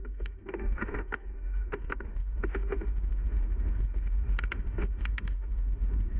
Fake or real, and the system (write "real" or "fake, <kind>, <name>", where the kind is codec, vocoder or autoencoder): fake, autoencoder, DAC-VAE